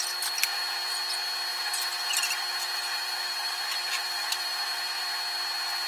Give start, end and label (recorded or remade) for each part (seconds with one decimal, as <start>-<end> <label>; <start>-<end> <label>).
0.0-1.5 recorded; 1.5-5.0 remade; 5.0-5.9 recorded